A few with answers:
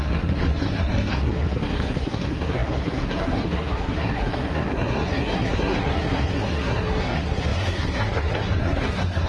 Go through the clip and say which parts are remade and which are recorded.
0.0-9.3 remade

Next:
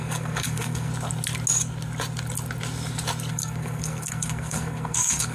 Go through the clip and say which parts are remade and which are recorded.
0.0-0.9 remade; 0.9-3.3 recorded; 3.3-5.3 remade

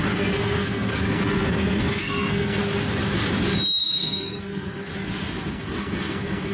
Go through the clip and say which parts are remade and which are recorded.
0.0-2.6 remade; 2.6-3.8 recorded; 3.8-4.9 remade; 4.9-5.5 recorded; 5.5-6.5 remade

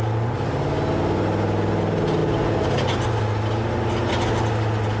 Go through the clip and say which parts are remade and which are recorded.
0.0-5.0 recorded

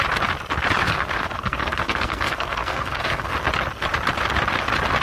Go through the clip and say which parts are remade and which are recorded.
0.0-0.8 recorded; 0.8-3.3 remade; 3.3-5.0 recorded

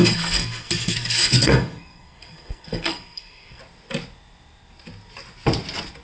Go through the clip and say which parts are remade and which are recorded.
0.0-3.6 remade; 3.6-6.0 recorded

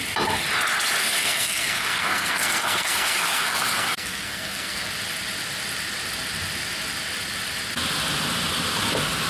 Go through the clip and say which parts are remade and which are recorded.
0.0-1.0 recorded; 1.0-4.9 remade; 4.9-9.3 recorded

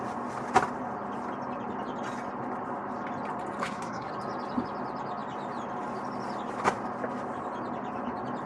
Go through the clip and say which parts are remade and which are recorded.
0.0-3.6 recorded; 3.6-4.1 remade; 4.1-8.5 recorded